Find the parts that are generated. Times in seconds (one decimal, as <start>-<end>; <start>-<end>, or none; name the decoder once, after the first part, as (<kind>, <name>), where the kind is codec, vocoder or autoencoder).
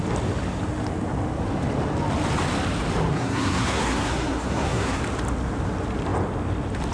3.1-5.0 (codec, SNAC)